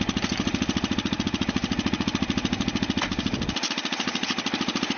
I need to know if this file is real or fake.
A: real